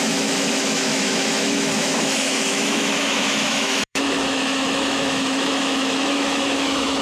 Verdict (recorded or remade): remade